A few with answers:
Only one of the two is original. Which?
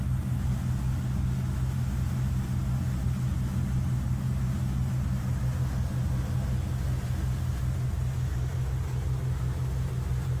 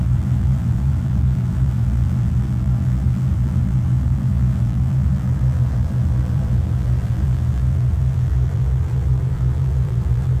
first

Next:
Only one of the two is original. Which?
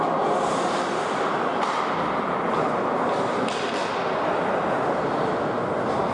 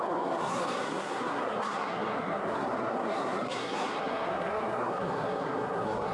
first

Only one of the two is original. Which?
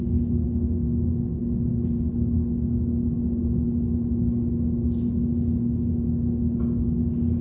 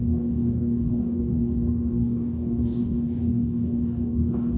first